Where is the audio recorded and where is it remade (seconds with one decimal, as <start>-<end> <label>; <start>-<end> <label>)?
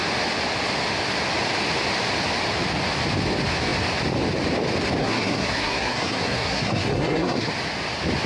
0.0-5.0 recorded; 5.0-7.5 remade; 7.5-8.3 recorded